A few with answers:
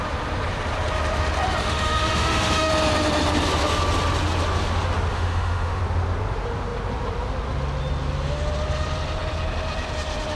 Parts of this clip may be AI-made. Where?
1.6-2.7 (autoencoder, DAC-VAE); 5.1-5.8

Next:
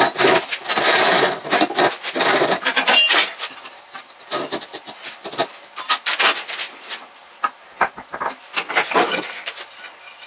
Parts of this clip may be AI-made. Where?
0.0-5.4 (vocoder, BigVGAN v2); 8.0-10.3

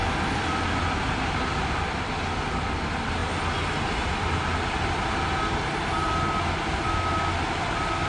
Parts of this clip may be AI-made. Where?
none

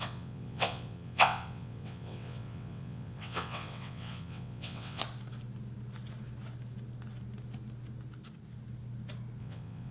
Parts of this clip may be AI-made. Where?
0.0-5.0 (vocoder, WaveNeXt); 9.4-9.9

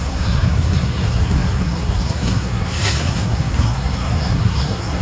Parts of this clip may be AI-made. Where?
0.0-5.0 (codec, SNAC)

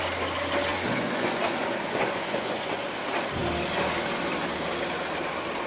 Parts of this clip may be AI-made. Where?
0.7-2.9 (vocoder, Vocos)

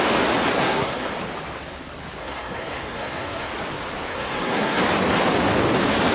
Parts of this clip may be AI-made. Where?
0.6-1.1 (codec, SNAC); 2.2-3.5; 4.1-4.8